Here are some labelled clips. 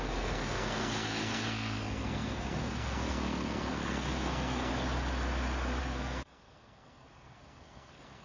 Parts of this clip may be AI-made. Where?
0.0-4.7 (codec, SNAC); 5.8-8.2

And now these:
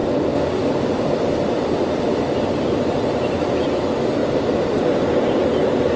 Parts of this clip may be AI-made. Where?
none

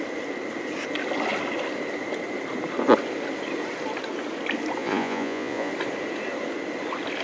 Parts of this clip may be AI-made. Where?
4.8-5.7 (vocoder, Vocos)